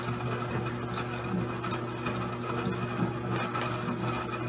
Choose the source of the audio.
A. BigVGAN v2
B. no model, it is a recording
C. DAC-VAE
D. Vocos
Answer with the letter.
B